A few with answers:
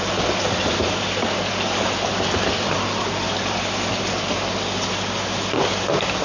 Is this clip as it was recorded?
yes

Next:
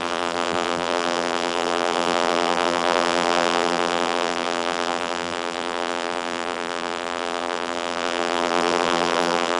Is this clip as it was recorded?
no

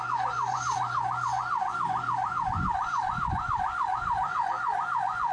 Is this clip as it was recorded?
no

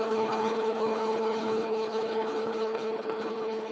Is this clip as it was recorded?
no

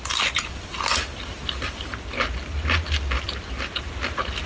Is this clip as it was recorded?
yes